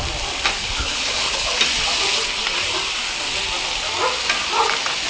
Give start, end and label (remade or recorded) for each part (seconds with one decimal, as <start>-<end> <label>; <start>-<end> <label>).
0.0-0.6 recorded; 0.6-1.5 remade; 1.5-5.1 recorded